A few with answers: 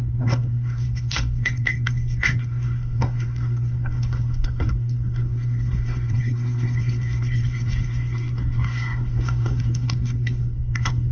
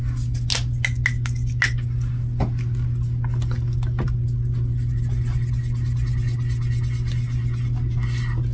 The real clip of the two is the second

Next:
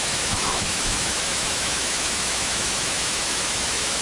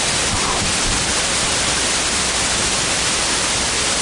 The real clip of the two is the second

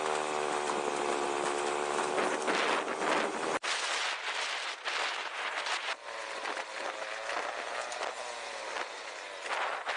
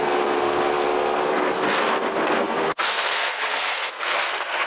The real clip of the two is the first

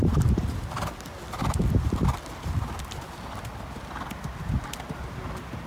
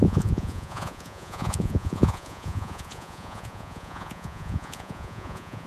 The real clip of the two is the first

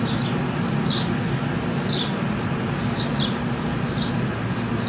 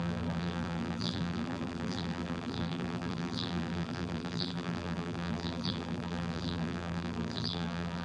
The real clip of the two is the first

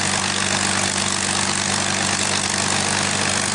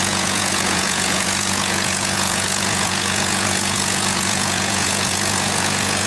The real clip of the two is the first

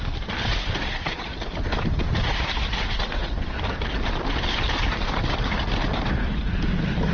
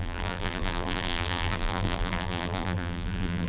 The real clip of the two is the first